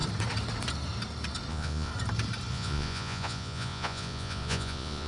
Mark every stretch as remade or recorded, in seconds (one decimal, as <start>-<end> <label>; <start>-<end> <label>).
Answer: 0.0-1.5 recorded; 1.5-1.9 remade; 1.9-2.5 recorded; 2.5-5.1 remade